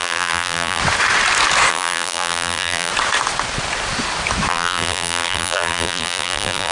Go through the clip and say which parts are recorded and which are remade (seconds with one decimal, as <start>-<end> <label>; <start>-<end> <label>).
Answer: 0.0-0.8 remade; 0.8-1.7 recorded; 1.7-2.9 remade; 2.9-4.5 recorded; 4.5-6.7 remade